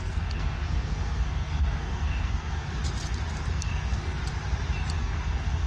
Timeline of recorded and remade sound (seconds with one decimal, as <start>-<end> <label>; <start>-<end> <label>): 0.0-2.8 remade; 2.8-3.5 recorded; 3.5-4.2 remade; 4.2-5.0 recorded; 5.0-5.7 remade